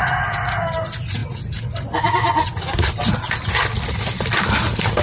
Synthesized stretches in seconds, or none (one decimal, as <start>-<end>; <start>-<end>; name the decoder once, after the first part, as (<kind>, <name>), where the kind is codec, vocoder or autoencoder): none